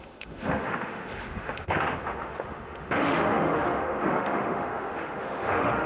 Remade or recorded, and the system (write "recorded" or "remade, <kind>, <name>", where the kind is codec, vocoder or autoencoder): remade, autoencoder, DAC-VAE